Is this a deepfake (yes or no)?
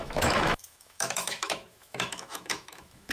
yes